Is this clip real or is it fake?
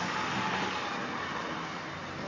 real